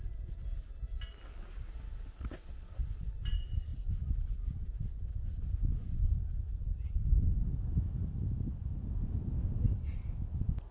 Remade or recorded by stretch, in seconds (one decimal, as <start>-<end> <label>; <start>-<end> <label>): 0.0-10.7 recorded